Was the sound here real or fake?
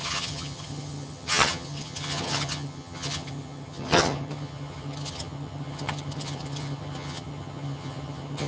fake